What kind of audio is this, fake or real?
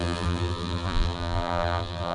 fake